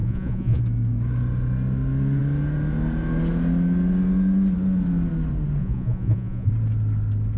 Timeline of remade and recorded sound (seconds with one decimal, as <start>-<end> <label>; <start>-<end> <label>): 0.0-0.6 remade; 0.6-5.6 recorded; 5.6-6.5 remade; 6.5-7.4 recorded